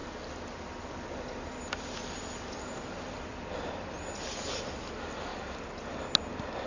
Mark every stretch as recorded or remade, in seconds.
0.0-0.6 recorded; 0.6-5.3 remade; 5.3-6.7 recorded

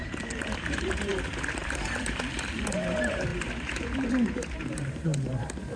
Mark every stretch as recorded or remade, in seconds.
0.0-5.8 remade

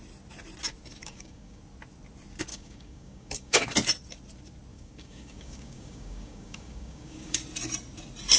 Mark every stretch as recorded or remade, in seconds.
0.0-1.0 recorded; 1.0-1.6 remade; 1.6-2.5 recorded; 2.5-3.6 remade; 3.6-4.7 recorded; 4.7-7.4 remade; 7.4-8.4 recorded

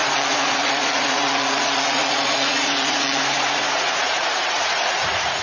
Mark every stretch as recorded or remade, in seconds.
0.0-5.4 remade

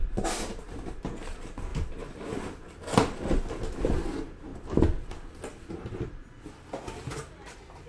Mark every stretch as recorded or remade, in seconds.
0.0-7.9 recorded

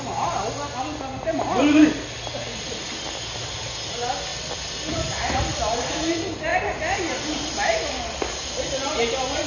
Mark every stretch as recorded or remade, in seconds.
0.0-6.5 recorded; 6.5-7.2 remade; 7.2-9.5 recorded